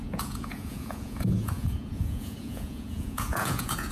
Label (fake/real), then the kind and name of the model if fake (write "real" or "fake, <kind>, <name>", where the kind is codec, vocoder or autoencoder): fake, vocoder, Vocos